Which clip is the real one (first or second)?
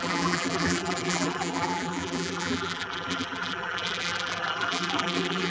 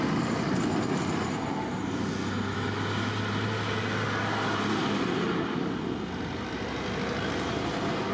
second